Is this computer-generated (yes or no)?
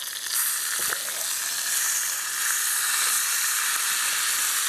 no